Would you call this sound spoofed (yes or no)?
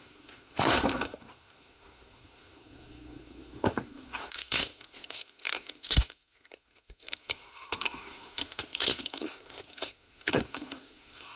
yes